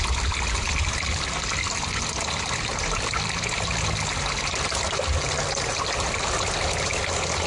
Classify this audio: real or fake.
real